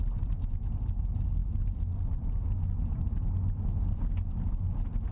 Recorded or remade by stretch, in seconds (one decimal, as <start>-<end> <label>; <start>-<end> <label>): 0.0-5.1 recorded